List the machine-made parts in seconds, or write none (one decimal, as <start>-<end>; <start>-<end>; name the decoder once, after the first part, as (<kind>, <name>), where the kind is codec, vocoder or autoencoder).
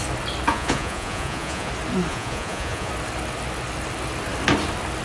0.5-1.7 (vocoder, Vocos); 2.1-2.9